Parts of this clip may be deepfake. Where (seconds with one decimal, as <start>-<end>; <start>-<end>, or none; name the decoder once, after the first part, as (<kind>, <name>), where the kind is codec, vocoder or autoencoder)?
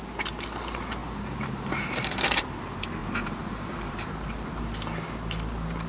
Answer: 1.0-2.4 (vocoder, BigVGAN v2); 3.0-4.6